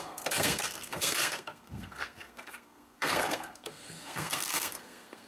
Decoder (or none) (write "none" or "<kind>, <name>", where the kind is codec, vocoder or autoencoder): codec, SNAC